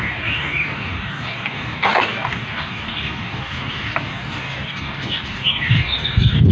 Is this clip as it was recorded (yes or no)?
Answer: no